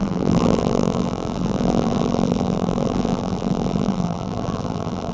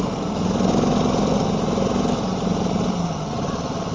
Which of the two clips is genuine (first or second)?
second